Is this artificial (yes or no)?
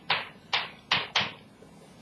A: no